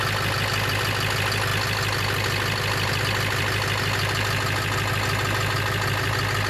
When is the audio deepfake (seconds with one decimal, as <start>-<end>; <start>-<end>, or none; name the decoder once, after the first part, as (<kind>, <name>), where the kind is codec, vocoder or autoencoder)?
none